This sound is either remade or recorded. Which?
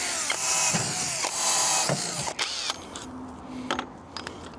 recorded